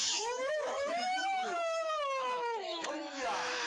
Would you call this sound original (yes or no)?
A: no